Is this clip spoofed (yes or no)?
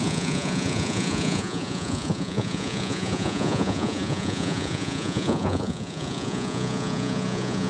yes